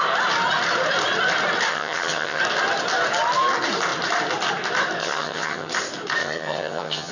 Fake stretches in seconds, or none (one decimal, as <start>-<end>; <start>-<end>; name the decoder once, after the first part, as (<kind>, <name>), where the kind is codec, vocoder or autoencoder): 1.7-2.4 (vocoder, HiFi-GAN); 5.0-5.7; 6.2-7.1